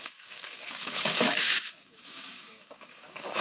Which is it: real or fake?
fake